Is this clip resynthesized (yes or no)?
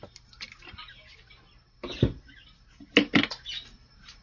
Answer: no